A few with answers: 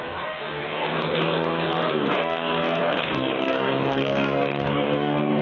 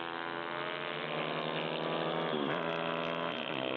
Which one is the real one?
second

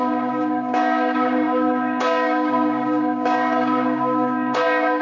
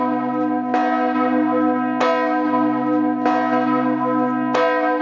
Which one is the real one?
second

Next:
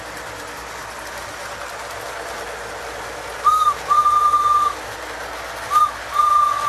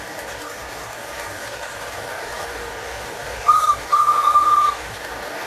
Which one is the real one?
first